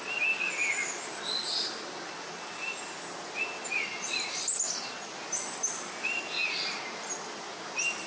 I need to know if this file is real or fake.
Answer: real